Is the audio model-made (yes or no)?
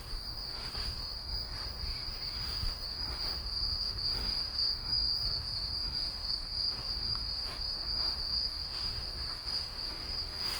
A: yes